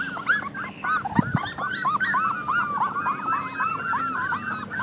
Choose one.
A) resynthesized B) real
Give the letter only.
B